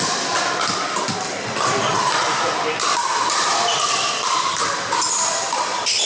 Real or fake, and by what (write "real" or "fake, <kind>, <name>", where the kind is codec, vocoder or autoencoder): real